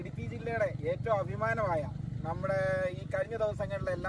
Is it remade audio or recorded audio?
recorded